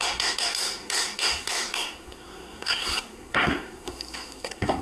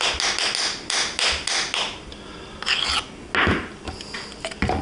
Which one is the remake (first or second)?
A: first